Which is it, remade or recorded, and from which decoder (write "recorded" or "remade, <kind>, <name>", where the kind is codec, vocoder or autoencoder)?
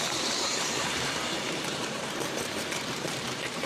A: remade, vocoder, BigVGAN v2